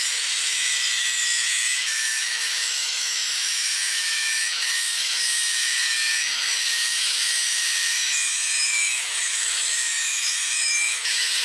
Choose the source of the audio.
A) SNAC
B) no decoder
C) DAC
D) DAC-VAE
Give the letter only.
D